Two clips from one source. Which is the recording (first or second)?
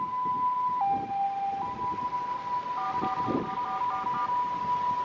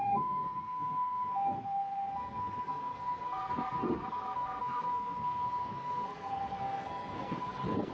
first